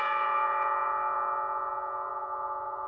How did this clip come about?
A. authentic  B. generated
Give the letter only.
B